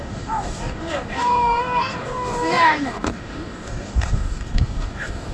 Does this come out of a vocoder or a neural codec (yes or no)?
yes